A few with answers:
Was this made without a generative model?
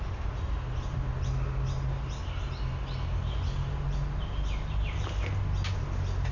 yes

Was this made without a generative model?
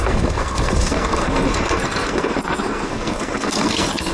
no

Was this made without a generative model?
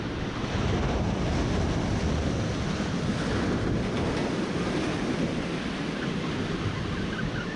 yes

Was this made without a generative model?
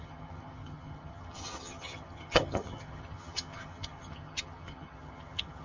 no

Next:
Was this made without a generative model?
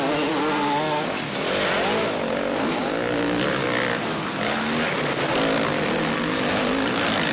yes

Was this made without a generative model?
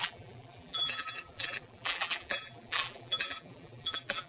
no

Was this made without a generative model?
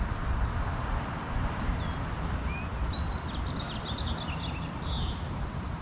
yes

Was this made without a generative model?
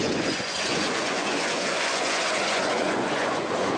no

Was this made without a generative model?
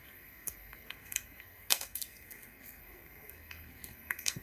no